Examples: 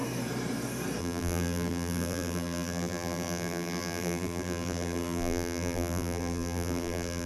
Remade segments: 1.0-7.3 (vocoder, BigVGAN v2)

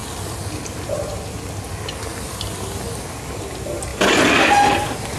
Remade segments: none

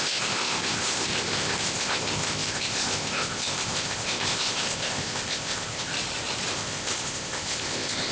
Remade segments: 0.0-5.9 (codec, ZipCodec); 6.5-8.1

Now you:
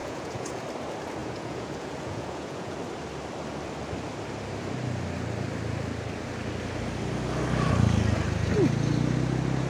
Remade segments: 0.0-0.6 (vocoder, Vocos); 1.2-2.8

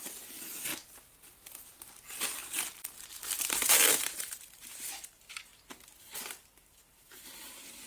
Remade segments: 0.0-0.7 (vocoder, BigVGAN v2); 3.7-5.5; 6.6-7.9